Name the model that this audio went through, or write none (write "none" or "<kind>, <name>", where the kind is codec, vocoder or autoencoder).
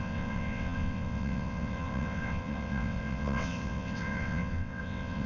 vocoder, WaveNeXt